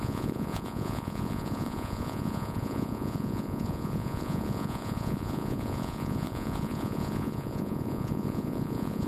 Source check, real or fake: fake